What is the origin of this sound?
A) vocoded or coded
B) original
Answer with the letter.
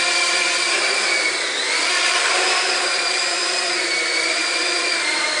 A